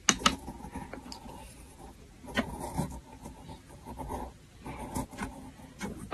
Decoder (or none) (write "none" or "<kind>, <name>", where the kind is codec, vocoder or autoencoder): none